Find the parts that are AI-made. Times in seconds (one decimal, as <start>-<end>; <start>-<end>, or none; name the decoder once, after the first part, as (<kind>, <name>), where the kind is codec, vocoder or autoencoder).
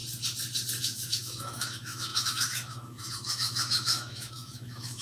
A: 0.8-5.0 (autoencoder, DAC-VAE)